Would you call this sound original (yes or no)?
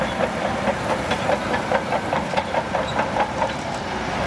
no